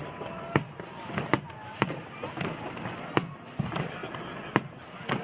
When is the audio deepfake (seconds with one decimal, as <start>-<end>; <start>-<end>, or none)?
none